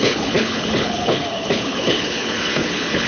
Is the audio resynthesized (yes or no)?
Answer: yes